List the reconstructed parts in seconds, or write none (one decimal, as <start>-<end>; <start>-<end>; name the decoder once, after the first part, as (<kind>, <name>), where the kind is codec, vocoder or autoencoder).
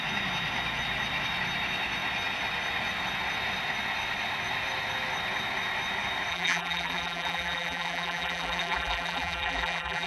6.3-10.1 (vocoder, BigVGAN v2)